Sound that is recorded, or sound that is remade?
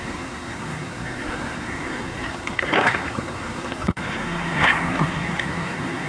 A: remade